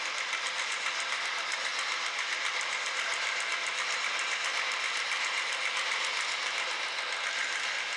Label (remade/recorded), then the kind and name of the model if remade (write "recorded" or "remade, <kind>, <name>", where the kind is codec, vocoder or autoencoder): recorded